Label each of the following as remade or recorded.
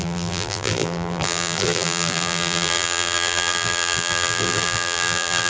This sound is remade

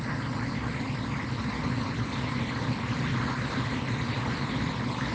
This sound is recorded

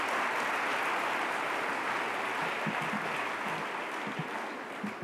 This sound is recorded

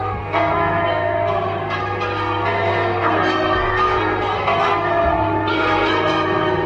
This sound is remade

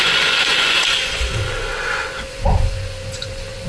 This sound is remade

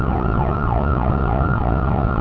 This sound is remade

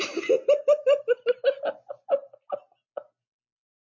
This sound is recorded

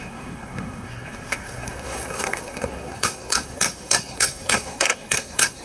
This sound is remade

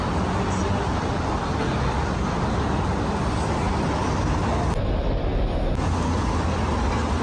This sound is recorded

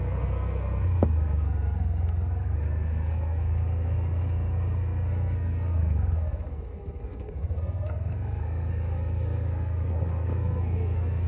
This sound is remade